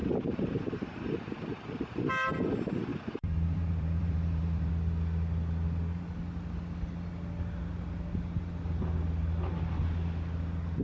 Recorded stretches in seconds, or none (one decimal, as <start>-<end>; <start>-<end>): 2.0-2.9; 4.7-10.8